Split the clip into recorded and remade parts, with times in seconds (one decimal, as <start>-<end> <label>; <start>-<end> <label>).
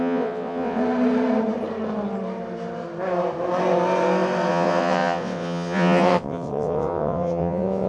0.0-0.8 remade; 0.8-4.5 recorded; 4.5-7.9 remade